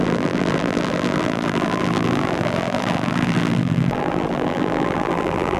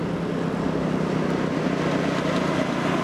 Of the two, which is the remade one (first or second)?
first